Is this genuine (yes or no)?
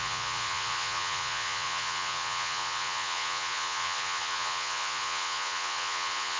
no